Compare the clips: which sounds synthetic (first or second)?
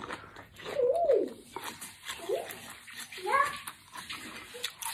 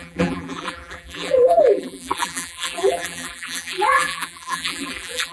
second